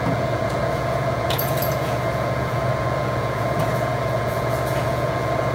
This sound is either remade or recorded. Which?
remade